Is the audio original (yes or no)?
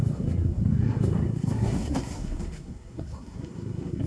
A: no